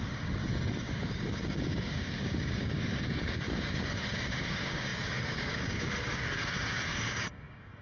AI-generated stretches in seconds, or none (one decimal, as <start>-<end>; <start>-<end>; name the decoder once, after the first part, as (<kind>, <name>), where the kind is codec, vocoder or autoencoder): 0.0-7.8 (codec, DAC)